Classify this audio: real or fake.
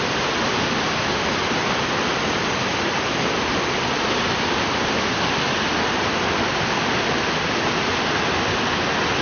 real